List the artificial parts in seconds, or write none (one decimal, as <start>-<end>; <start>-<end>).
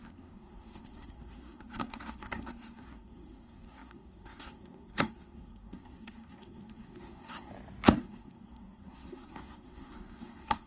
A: 0.0-7.5; 8.0-10.7